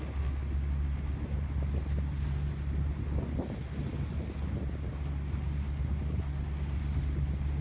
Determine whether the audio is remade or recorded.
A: recorded